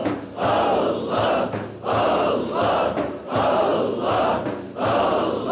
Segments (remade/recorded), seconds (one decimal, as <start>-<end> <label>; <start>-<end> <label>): 0.0-2.3 recorded; 2.3-3.7 remade; 3.7-5.1 recorded; 5.1-5.5 remade